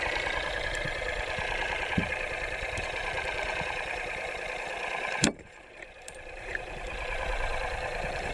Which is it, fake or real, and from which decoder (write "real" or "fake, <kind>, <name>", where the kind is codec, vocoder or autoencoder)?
fake, vocoder, BigVGAN v2